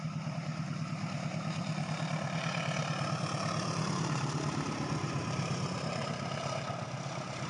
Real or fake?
fake